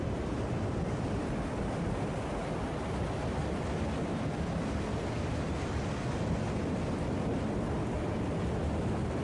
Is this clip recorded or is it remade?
recorded